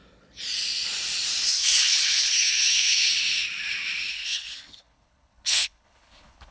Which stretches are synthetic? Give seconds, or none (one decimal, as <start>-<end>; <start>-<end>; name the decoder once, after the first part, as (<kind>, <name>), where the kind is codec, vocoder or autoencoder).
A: 1.5-3.1 (codec, HILCodec); 4.1-6.5